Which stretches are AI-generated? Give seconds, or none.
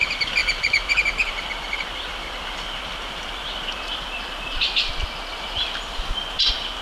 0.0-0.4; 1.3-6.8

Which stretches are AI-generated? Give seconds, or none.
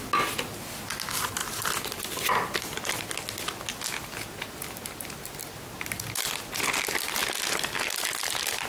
none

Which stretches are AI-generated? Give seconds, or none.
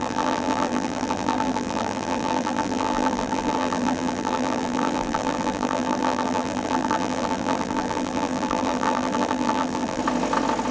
0.0-10.0